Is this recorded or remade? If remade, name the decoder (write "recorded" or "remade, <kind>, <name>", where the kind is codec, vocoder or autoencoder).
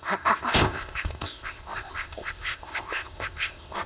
remade, codec, ZipCodec